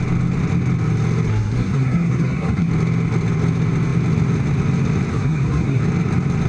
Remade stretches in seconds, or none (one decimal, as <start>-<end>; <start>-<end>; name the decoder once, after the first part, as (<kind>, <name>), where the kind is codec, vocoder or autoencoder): 1.3-2.7 (codec, SNAC); 5.1-5.8